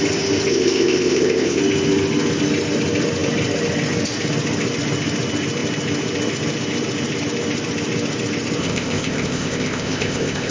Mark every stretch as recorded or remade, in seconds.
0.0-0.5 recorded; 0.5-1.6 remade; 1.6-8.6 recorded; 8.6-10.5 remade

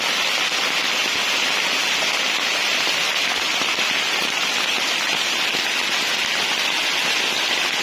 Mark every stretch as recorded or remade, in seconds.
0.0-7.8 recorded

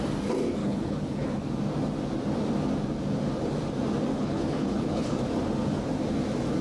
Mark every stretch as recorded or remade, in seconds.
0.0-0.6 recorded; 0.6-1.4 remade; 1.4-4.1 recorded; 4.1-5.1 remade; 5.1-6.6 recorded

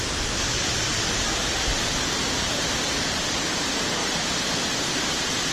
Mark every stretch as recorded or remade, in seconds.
0.0-4.0 recorded; 4.0-4.9 remade; 4.9-5.5 recorded

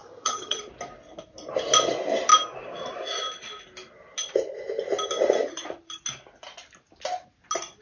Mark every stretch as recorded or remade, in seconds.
0.0-0.6 remade; 0.6-7.8 recorded

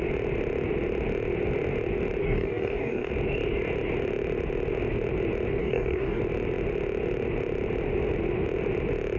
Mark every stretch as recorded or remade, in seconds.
0.0-2.2 recorded; 2.2-3.1 remade; 3.1-5.6 recorded; 5.6-6.2 remade; 6.2-9.2 recorded